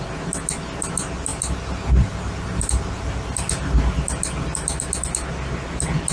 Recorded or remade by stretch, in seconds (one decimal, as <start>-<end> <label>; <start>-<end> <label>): 0.0-6.1 recorded

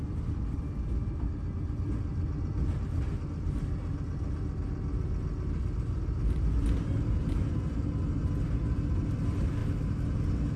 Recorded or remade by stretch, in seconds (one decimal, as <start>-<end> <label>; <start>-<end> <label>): 0.0-10.6 recorded

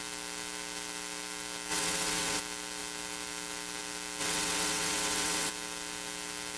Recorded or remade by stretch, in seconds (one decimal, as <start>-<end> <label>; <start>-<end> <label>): 0.0-1.7 recorded; 1.7-2.4 remade; 2.4-4.2 recorded; 4.2-5.5 remade; 5.5-6.6 recorded

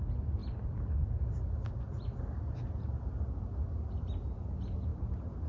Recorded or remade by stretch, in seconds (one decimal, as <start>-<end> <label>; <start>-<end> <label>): 0.0-5.5 recorded

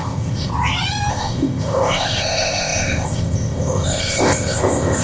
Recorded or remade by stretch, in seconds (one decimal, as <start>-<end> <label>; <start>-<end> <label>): 0.0-0.5 remade; 0.5-1.1 recorded; 1.1-5.0 remade